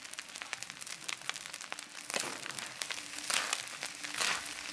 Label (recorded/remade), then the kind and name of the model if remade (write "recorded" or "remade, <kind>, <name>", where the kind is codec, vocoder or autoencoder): recorded